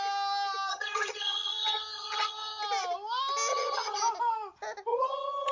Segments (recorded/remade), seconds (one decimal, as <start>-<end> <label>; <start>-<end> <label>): 0.0-0.7 recorded; 0.7-2.6 remade; 2.6-3.5 recorded; 3.5-4.0 remade; 4.0-4.9 recorded; 4.9-5.5 remade